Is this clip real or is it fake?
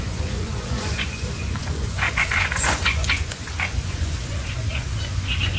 fake